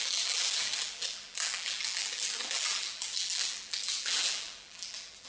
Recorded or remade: remade